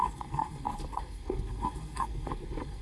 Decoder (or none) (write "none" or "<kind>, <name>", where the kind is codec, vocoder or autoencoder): codec, SNAC